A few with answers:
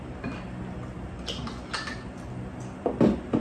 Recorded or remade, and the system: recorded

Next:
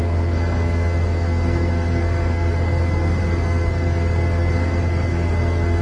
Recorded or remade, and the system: remade, codec, SNAC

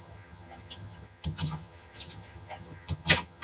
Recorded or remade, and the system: remade, vocoder, HiFi-GAN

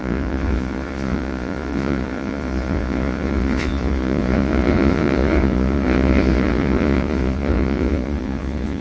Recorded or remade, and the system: remade, vocoder, Vocos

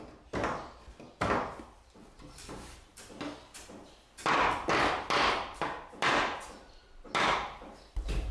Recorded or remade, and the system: recorded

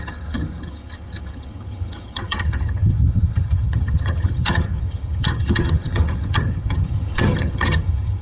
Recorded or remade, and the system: remade, vocoder, HiFi-GAN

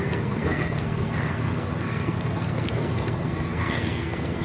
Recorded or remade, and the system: remade, codec, SNAC